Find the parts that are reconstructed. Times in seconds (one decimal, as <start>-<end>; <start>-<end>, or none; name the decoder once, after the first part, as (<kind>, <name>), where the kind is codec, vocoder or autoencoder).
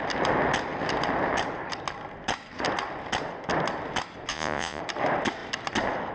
4.3-4.8 (vocoder, Vocos)